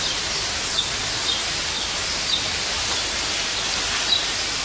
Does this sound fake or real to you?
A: real